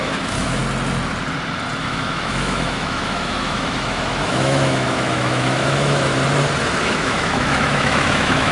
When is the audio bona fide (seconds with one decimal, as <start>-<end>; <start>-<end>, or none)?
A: 0.6-1.8; 6.1-6.8